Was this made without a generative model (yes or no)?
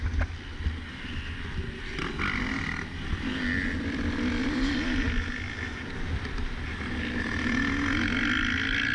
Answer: yes